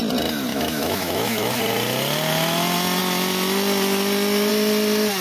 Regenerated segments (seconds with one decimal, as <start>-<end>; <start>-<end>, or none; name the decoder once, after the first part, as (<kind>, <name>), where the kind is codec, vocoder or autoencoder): 0.5-1.6 (autoencoder, DAC-VAE)